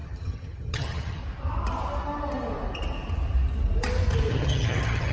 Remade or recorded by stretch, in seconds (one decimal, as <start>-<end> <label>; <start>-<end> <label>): 0.0-1.2 remade; 1.2-4.3 recorded; 4.3-5.1 remade